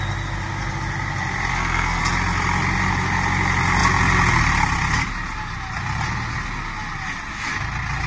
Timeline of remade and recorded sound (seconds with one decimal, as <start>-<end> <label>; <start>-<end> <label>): 0.0-1.5 recorded; 1.5-2.0 remade; 2.0-8.1 recorded